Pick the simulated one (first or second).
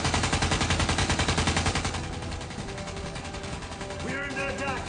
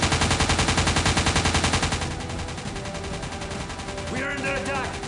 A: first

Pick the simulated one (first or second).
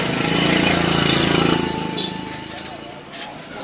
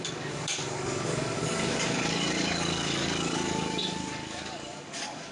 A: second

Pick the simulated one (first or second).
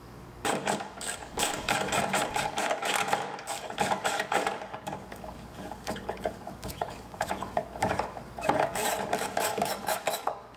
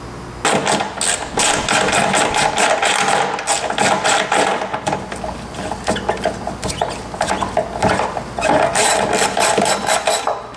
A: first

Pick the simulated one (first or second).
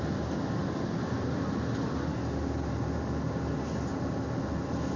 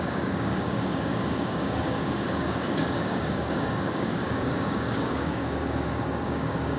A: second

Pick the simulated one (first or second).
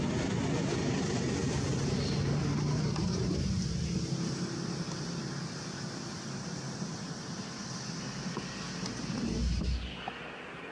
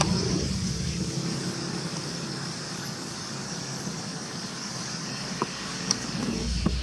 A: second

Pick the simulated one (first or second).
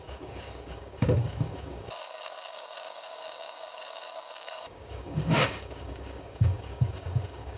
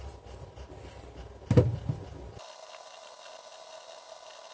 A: first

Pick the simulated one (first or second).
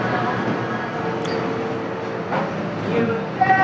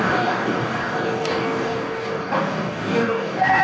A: second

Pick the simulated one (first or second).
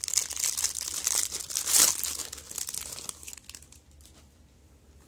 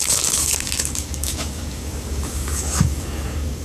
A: second